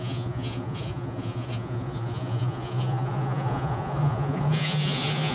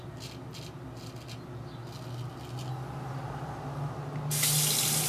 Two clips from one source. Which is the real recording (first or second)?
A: second